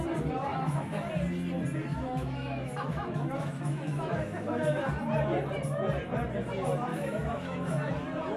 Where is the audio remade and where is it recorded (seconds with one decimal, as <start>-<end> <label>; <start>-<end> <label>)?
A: 0.0-0.5 recorded; 0.5-1.1 remade; 1.1-1.9 recorded; 1.9-4.9 remade; 4.9-6.9 recorded; 6.9-7.9 remade; 7.9-8.4 recorded